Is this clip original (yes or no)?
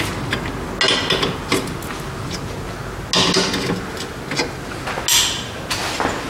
yes